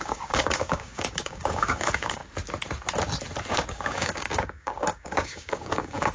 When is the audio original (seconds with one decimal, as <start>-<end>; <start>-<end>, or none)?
2.2-3.5